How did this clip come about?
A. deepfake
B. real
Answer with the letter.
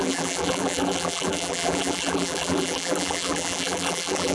A